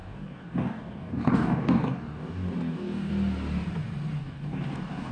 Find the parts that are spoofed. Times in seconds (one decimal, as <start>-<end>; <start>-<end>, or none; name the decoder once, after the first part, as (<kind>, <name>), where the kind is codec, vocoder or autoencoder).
0.0-3.1 (codec, DAC); 4.2-5.1

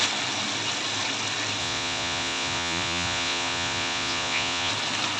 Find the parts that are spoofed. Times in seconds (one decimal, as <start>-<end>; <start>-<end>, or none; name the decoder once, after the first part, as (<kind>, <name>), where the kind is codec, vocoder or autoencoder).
1.6-4.7 (vocoder, Vocos)

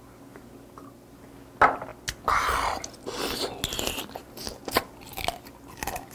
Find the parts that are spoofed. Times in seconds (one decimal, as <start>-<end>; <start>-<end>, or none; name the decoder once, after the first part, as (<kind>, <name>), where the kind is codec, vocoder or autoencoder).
none

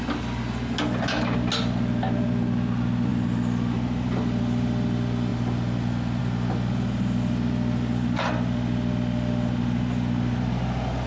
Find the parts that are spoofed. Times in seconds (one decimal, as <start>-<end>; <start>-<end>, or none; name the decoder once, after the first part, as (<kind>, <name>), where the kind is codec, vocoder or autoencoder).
none

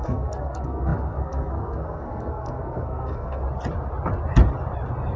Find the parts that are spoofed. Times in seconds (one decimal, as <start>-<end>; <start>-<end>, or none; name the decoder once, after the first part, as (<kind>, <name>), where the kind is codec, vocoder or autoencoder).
0.0-3.4 (codec, SNAC)

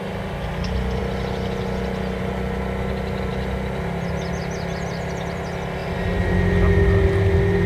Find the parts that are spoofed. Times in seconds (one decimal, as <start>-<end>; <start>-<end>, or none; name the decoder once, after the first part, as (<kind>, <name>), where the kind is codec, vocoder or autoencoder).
none

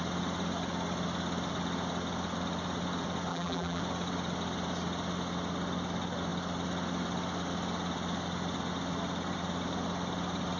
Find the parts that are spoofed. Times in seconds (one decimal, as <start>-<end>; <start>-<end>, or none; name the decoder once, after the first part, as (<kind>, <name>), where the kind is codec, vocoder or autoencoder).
3.3-3.8 (vocoder, BigVGAN v2)